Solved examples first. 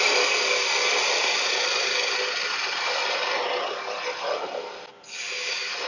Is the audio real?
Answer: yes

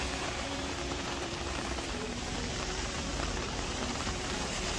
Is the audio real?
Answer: no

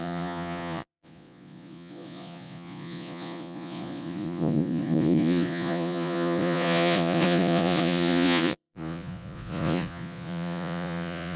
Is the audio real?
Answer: no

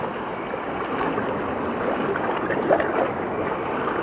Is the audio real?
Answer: yes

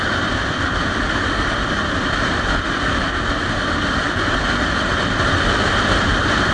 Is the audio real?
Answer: yes